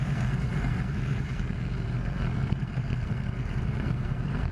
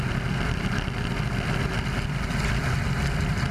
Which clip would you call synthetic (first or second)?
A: first